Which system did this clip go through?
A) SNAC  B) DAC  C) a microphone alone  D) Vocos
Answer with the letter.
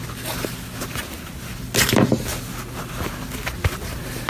C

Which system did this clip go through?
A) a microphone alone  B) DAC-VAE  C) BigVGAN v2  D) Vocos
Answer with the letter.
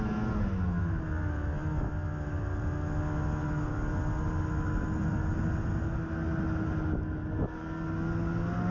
A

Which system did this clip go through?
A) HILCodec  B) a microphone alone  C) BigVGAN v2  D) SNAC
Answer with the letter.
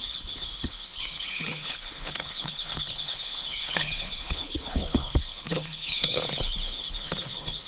A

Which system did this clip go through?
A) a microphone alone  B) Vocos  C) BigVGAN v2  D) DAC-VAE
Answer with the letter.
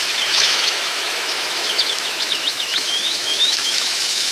D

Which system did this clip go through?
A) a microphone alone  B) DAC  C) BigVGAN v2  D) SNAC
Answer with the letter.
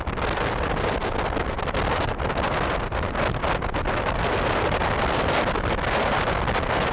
A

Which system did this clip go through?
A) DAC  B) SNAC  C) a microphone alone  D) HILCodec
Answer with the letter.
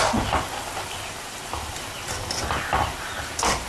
C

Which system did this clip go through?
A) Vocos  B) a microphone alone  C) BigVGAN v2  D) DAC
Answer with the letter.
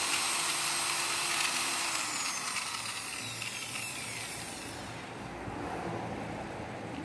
B